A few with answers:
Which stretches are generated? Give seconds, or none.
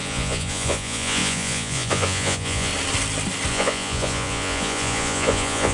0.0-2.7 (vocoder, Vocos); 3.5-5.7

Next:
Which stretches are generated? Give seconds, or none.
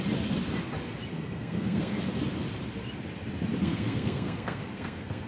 1.1-2.0 (codec, SNAC); 3.6-5.3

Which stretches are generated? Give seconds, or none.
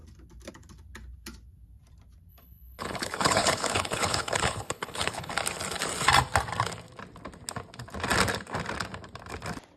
2.3-5.3 (codec, HILCodec)